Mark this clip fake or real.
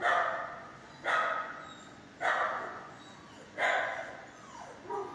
fake